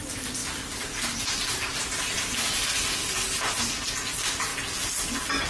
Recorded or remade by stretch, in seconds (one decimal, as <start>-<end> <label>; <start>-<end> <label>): 0.0-5.5 recorded